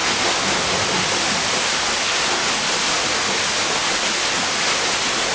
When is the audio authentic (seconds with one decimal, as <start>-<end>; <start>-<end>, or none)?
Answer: 0.0-5.3